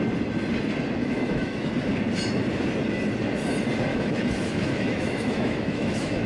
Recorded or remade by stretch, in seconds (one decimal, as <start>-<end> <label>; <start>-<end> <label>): 0.0-1.0 recorded; 1.0-1.7 remade; 1.7-3.9 recorded; 3.9-6.3 remade